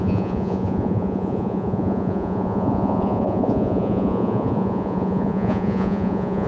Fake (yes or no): yes